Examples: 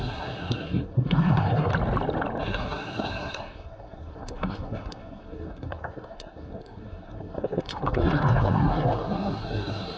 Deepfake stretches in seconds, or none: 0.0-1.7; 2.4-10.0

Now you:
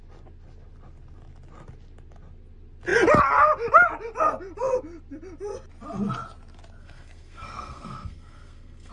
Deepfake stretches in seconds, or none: 6.8-8.9